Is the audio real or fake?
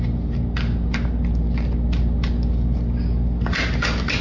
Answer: real